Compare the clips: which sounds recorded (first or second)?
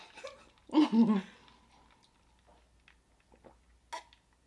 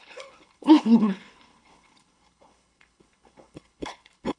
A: first